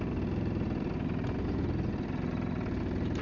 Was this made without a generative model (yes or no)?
yes